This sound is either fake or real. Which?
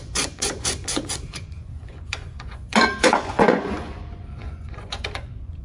fake